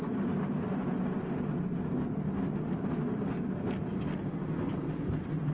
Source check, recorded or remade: recorded